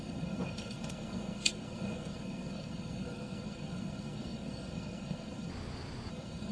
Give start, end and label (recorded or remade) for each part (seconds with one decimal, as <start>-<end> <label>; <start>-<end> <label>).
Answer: 0.0-5.5 remade; 5.5-6.1 recorded; 6.1-6.5 remade